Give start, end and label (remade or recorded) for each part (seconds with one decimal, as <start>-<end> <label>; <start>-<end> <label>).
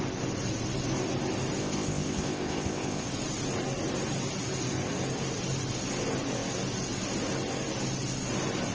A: 0.0-1.6 recorded; 1.6-3.1 remade; 3.1-8.7 recorded